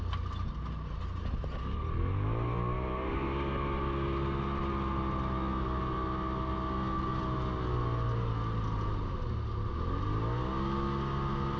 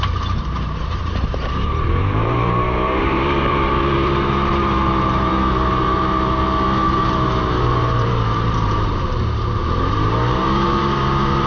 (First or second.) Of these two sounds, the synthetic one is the second